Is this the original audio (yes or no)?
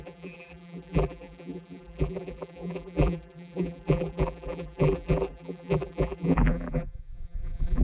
no